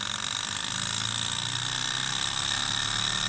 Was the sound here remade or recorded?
recorded